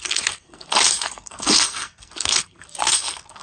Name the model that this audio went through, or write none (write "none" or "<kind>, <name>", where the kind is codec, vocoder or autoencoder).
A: codec, SNAC